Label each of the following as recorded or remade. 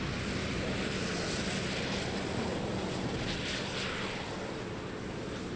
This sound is recorded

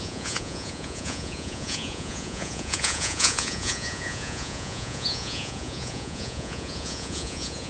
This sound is remade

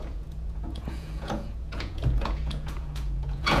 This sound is remade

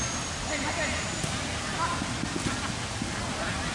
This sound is recorded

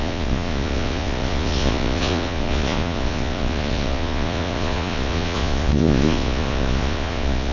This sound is remade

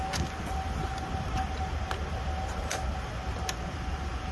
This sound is recorded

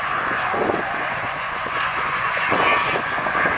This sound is remade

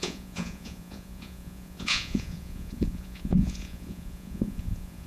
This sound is remade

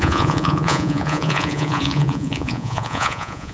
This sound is remade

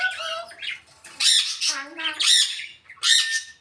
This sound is recorded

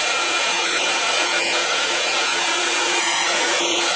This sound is remade